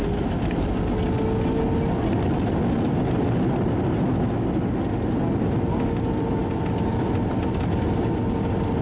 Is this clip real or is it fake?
real